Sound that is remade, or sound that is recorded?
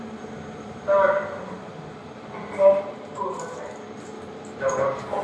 remade